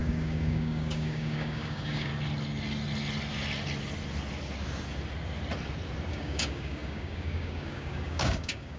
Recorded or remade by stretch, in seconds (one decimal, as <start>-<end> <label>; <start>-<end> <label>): 0.0-2.1 remade; 2.1-6.1 recorded; 6.1-8.8 remade